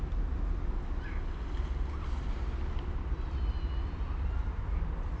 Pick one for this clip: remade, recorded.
recorded